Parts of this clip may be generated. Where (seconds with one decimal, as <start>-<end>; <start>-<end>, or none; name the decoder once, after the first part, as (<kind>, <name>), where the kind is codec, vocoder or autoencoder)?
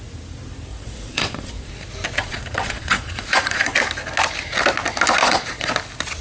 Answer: 0.7-1.7 (vocoder, Vocos); 2.2-3.7; 5.2-5.7